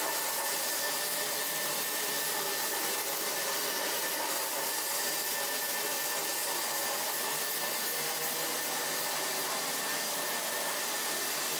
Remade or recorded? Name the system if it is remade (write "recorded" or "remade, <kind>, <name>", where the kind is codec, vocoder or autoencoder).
recorded